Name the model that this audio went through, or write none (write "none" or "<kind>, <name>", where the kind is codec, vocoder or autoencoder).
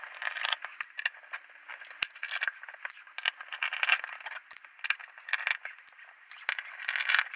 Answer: none